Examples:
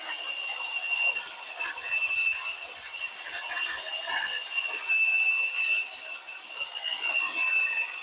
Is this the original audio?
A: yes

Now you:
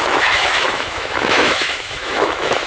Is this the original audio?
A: no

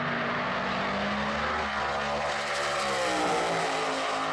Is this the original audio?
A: yes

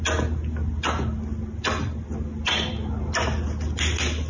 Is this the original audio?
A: yes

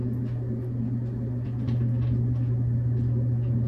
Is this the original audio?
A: yes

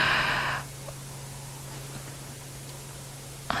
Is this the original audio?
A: yes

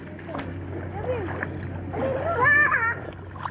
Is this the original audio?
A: yes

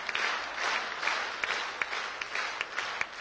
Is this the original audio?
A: yes